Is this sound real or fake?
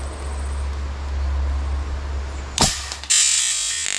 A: real